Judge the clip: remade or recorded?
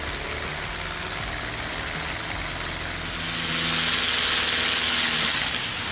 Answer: recorded